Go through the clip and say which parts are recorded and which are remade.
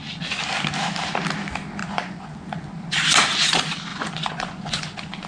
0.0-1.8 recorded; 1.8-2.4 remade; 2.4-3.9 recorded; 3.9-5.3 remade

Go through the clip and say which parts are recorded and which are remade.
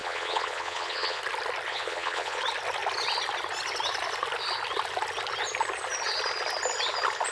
0.0-1.2 remade; 1.2-1.7 recorded; 1.7-2.4 remade; 2.4-7.3 recorded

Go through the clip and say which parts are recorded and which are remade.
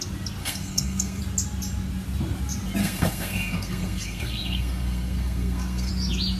0.0-0.4 recorded; 0.4-1.2 remade; 1.2-2.8 recorded; 2.8-5.9 remade; 5.9-6.4 recorded